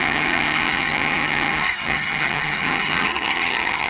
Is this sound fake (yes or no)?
yes